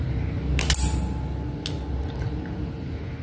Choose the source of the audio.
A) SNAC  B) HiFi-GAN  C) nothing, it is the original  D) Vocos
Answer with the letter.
C